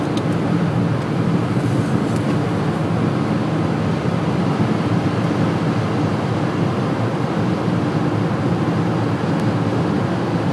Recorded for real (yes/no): yes